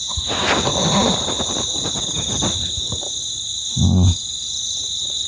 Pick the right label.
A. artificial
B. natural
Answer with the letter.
B